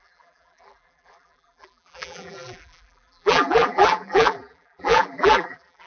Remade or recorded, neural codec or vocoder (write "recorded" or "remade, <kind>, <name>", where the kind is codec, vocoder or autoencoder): remade, vocoder, BigVGAN v2